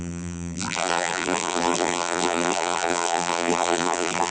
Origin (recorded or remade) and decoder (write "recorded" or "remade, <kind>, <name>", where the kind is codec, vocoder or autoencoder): remade, vocoder, BigVGAN v2